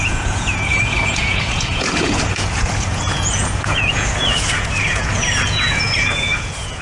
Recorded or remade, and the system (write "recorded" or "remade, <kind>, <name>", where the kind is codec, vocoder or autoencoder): remade, vocoder, Vocos